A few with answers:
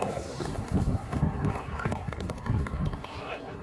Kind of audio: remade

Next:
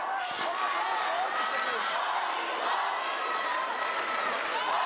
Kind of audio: recorded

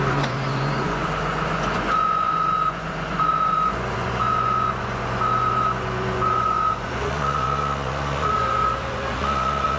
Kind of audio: remade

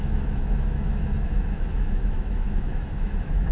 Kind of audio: remade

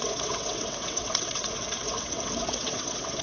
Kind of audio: remade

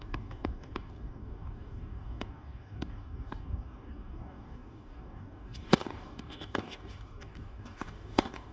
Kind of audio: remade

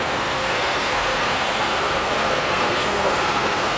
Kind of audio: remade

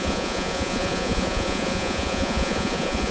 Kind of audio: remade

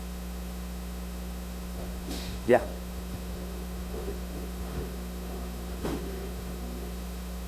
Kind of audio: remade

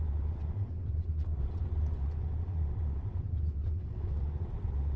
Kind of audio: remade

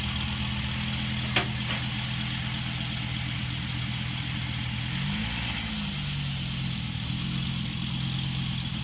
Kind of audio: recorded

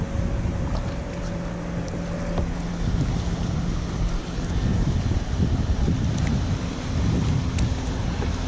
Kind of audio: recorded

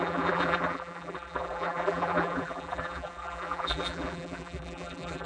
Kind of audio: remade